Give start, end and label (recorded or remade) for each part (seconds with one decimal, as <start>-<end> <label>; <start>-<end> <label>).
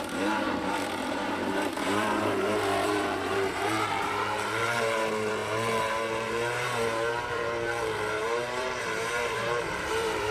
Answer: 0.0-10.3 remade